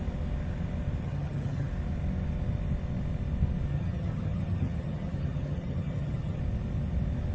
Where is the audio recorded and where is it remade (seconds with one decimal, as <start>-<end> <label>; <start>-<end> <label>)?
0.0-1.0 recorded; 1.0-1.7 remade; 1.7-3.7 recorded; 3.7-6.4 remade; 6.4-7.3 recorded